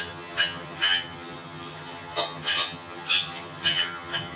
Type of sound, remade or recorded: remade